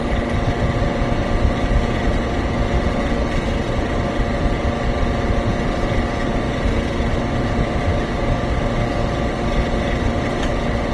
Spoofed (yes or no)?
no